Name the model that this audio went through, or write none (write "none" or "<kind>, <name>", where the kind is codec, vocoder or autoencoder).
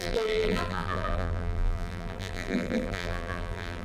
vocoder, BigVGAN v2